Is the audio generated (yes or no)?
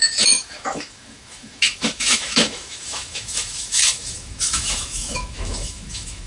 yes